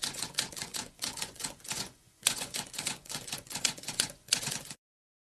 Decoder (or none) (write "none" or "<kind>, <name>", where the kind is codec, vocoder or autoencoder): vocoder, Vocos